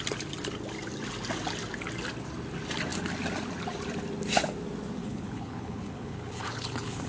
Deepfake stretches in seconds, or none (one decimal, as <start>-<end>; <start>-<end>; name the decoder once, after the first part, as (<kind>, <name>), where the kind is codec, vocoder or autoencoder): 5.0-7.1 (codec, HILCodec)